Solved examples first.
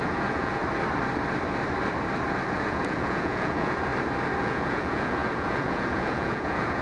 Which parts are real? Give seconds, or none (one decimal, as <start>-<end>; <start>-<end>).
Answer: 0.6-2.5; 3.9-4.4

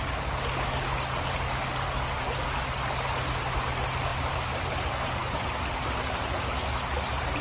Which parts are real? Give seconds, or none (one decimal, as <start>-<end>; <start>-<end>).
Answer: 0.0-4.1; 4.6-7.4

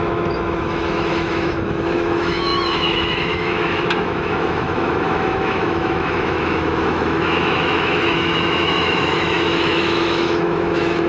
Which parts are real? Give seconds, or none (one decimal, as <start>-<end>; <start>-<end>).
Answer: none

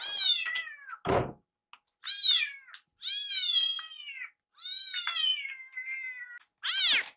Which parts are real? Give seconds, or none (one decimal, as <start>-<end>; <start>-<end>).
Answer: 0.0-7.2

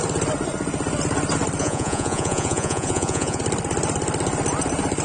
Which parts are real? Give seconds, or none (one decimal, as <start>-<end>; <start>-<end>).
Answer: 0.0-1.6; 3.4-5.0

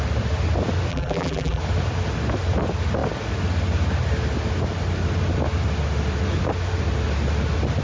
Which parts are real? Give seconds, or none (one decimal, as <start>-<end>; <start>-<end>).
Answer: 0.0-0.9; 1.6-7.8

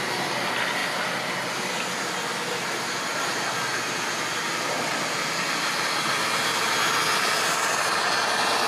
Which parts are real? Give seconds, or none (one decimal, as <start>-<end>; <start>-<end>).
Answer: 0.0-8.7

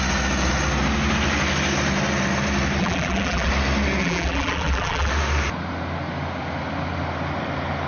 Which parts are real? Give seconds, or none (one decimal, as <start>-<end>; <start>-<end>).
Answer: 0.0-2.8; 3.5-4.0; 5.1-7.9